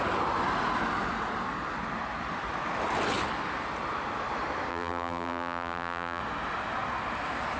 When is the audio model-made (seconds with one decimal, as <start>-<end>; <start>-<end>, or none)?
4.7-6.2